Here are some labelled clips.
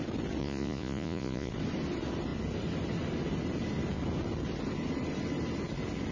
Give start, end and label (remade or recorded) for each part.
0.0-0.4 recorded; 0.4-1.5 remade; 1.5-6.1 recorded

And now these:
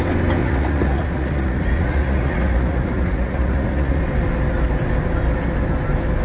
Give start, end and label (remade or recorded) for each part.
0.0-0.4 recorded; 0.4-4.0 remade; 4.0-6.2 recorded

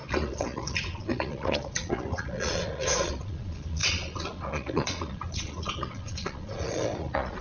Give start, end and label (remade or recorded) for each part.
0.0-7.4 remade

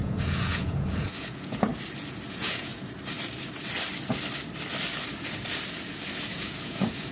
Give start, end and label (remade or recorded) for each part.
0.0-1.7 remade; 1.7-2.3 recorded; 2.3-2.7 remade; 2.7-6.3 recorded; 6.3-7.1 remade